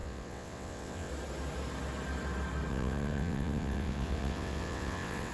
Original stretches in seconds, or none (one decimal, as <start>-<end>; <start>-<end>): 1.1-2.7